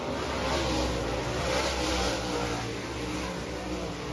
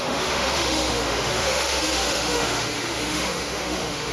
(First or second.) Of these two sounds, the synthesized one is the second